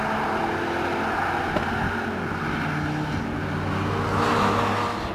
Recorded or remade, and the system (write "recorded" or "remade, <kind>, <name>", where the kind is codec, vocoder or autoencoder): recorded